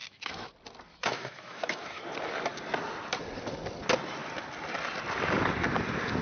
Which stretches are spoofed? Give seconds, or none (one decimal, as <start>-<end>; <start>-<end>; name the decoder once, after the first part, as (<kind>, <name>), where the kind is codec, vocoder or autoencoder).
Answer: 0.0-0.5 (autoencoder, DAC-VAE); 0.9-2.0